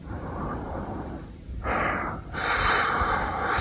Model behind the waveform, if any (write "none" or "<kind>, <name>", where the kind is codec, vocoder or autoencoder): vocoder, BigVGAN v2